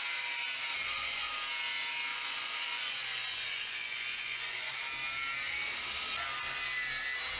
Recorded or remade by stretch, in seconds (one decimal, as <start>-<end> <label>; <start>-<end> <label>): 0.0-0.8 recorded; 0.8-1.3 remade; 1.3-2.1 recorded; 2.1-4.7 remade; 4.7-7.4 recorded